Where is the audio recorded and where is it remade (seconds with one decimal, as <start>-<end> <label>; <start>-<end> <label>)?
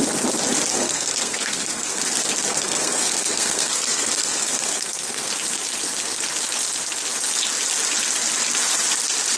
0.0-0.7 recorded; 0.7-2.0 remade; 2.0-2.5 recorded; 2.5-5.3 remade; 5.3-9.4 recorded